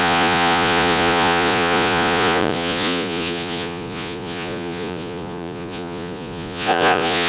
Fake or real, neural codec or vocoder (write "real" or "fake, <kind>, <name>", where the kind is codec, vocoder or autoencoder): fake, vocoder, Vocos